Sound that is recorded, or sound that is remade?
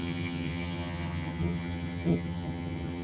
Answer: remade